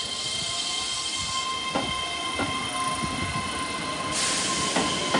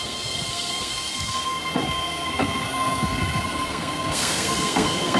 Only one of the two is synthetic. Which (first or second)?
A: second